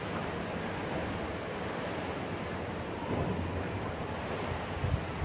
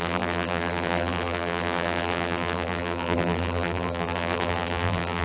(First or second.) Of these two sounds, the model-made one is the second